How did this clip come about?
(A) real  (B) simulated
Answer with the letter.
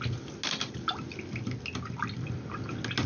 A